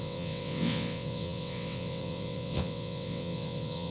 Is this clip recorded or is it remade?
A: remade